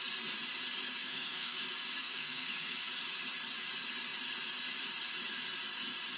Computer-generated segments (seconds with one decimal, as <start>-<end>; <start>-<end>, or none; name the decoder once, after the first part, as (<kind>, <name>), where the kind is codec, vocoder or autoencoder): 1.0-1.6 (codec, SNAC); 2.0-2.9